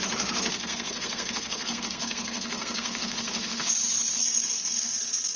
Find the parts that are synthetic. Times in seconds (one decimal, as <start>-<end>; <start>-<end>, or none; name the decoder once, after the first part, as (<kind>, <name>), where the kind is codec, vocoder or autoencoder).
0.5-3.7 (codec, SNAC); 4.2-5.4